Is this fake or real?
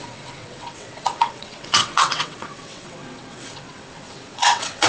fake